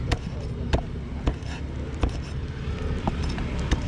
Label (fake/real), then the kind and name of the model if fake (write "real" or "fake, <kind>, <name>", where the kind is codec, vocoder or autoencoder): real